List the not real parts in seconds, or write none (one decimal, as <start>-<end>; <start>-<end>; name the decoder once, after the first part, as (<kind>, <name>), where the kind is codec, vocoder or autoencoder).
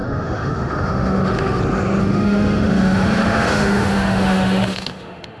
0.0-1.6 (autoencoder, DAC-VAE); 2.0-5.4